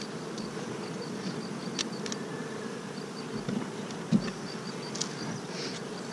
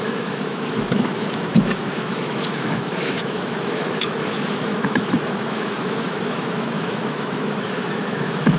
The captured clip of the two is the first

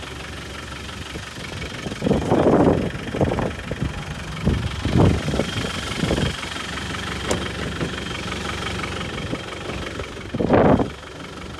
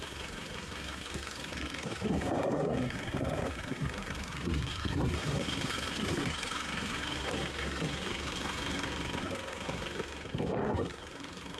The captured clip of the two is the first